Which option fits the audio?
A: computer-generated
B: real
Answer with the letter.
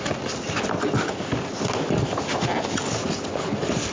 B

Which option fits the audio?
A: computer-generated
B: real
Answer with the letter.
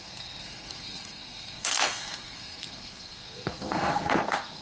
A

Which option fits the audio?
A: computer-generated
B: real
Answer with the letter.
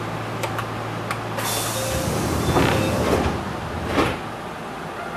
B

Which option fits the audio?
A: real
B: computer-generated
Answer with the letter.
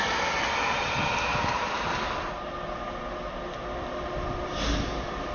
A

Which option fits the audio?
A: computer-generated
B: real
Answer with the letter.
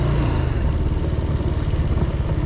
B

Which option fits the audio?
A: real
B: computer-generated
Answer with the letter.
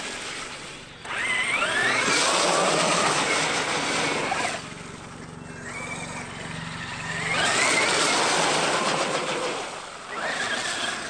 A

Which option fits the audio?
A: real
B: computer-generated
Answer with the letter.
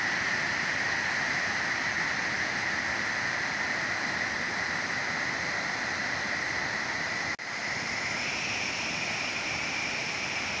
A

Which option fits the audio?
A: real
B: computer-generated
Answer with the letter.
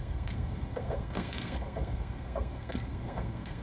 B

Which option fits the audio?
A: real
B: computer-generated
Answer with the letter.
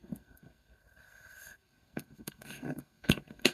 B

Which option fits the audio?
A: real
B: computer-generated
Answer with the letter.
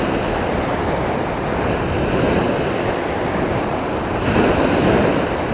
A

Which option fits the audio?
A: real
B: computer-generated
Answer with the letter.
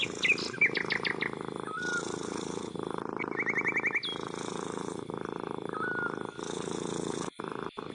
A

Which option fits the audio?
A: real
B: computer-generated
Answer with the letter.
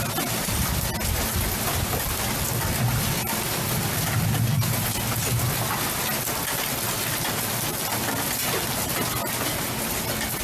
A